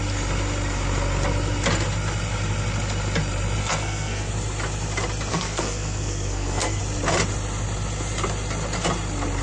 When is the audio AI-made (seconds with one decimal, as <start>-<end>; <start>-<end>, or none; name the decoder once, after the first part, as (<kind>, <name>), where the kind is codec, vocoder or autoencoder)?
3.6-4.3 (codec, SNAC); 5.3-6.8